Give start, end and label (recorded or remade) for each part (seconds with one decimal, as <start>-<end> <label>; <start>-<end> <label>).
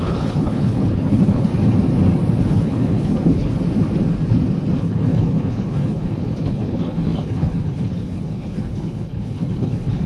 0.0-1.5 remade; 1.5-2.4 recorded; 2.4-3.5 remade; 3.5-4.8 recorded; 4.8-10.1 remade